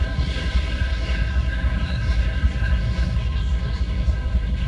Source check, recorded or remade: remade